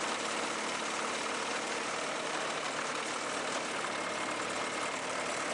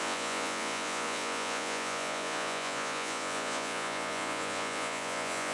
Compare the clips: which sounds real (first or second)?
first